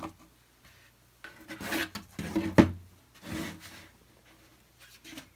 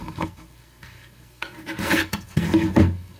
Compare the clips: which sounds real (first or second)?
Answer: first